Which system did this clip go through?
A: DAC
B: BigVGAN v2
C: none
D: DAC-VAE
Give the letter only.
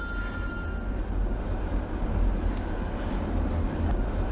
C